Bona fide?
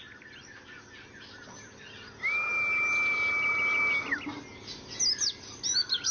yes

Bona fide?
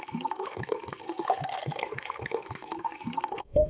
no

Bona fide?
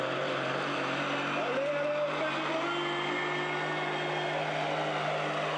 yes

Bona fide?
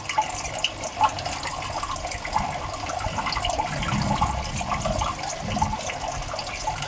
yes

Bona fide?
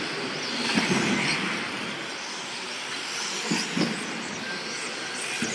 yes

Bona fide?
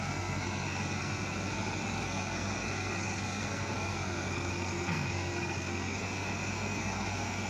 no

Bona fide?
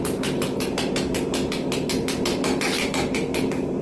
yes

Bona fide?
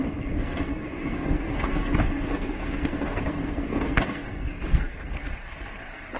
no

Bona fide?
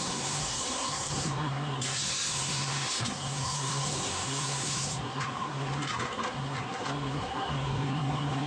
no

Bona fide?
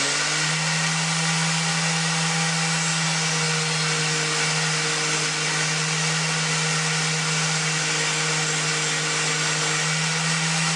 yes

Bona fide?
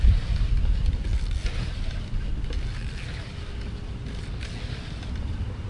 yes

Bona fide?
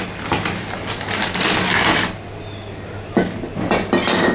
yes